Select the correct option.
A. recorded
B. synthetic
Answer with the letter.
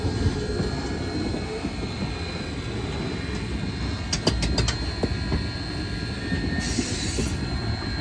A